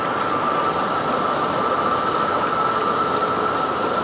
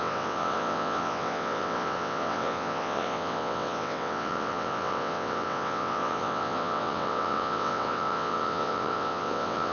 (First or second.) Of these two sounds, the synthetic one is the second